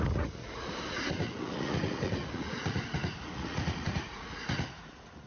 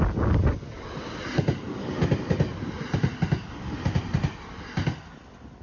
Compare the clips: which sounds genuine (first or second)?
second